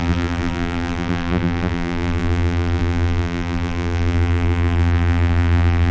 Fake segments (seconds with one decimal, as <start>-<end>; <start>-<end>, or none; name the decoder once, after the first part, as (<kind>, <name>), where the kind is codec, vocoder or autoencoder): 0.0-5.9 (vocoder, BigVGAN v2)